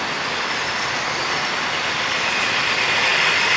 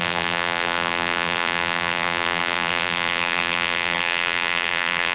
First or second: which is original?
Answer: first